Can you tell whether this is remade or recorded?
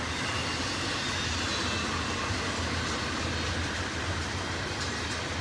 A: recorded